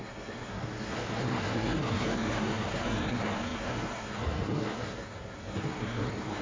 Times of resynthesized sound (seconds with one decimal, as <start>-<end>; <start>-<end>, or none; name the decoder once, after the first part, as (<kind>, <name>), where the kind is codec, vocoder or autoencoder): 0.0-6.4 (codec, SNAC)